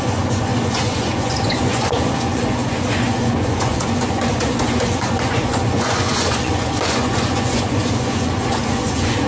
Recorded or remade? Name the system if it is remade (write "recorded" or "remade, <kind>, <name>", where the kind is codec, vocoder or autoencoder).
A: remade, vocoder, Vocos